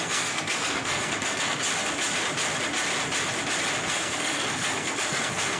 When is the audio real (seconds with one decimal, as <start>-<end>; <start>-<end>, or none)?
1.6-3.9